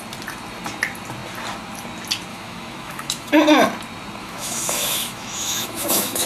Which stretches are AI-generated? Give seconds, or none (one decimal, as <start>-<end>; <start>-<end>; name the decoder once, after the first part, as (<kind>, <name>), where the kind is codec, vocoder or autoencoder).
2.3-3.3 (autoencoder, DAC-VAE); 4.2-6.3

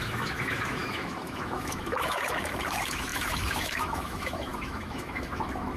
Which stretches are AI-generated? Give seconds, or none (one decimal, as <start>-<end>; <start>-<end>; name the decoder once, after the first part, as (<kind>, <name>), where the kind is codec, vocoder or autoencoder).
0.0-5.8 (autoencoder, DAC-VAE)

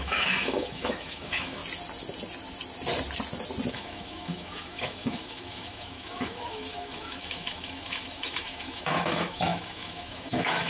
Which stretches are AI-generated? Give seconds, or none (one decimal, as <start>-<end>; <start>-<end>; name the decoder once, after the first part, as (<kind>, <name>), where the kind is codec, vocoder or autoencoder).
0.0-1.6 (autoencoder, DAC-VAE); 3.7-10.7

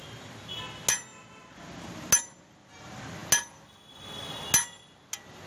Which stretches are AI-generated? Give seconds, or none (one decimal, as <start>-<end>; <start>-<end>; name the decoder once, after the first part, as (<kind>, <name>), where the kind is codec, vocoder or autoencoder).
none